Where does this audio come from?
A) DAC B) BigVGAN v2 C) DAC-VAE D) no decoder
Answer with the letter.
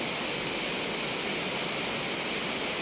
D